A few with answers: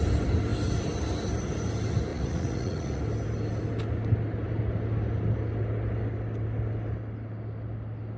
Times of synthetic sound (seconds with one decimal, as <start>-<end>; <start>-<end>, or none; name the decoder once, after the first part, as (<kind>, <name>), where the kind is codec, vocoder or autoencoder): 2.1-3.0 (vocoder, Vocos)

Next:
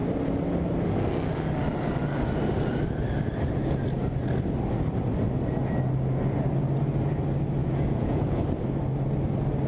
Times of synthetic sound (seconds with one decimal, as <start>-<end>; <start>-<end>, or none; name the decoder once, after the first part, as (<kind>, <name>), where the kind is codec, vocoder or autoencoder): 7.6-8.4 (vocoder, Vocos)

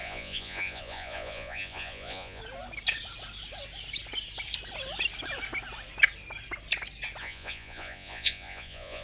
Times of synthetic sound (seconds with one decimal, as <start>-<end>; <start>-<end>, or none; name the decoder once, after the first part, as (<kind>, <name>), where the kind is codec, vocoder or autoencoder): 0.0-2.4 (vocoder, Vocos); 7.2-9.0

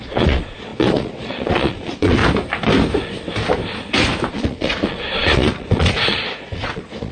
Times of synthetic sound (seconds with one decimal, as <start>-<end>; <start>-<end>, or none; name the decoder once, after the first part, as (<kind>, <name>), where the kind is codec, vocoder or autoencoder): 0.0-2.2 (vocoder, Vocos); 4.3-7.1

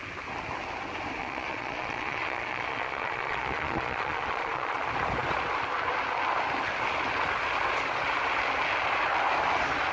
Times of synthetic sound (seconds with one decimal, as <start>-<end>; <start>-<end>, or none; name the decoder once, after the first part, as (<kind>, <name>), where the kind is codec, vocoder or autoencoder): 1.2-4.8 (vocoder, Vocos)

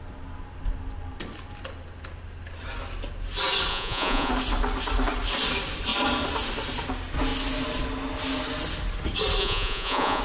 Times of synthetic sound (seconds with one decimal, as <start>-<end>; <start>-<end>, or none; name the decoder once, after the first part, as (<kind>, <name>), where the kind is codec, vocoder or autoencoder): 3.7-4.3 (vocoder, Vocos); 9.4-10.2